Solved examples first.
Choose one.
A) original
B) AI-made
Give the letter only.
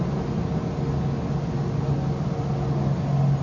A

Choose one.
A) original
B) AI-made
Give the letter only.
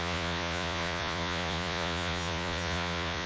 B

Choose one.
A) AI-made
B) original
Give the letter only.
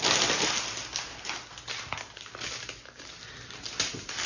B